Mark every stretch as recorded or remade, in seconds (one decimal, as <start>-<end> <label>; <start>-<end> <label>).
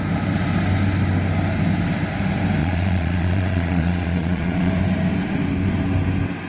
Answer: 0.0-2.6 recorded; 2.6-4.7 remade; 4.7-6.5 recorded